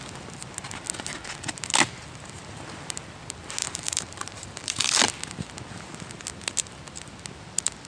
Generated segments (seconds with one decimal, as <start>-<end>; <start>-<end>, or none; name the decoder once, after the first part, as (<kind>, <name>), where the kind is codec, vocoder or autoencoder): 3.6-4.8 (vocoder, BigVGAN v2)